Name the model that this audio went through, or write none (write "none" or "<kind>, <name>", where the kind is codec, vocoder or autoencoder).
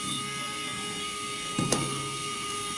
codec, SNAC